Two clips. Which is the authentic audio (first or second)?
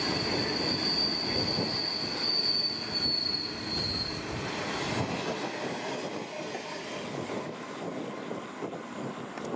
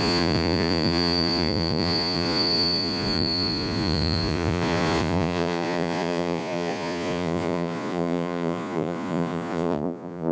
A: first